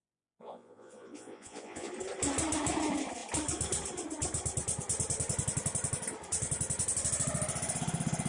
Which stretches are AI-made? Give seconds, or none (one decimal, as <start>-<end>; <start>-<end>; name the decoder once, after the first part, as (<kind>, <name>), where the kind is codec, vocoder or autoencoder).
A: 0.0-1.9 (vocoder, Vocos)